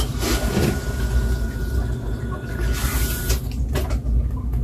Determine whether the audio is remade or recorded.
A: recorded